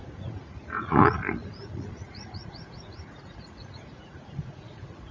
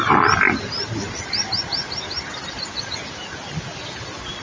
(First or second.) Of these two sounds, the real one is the second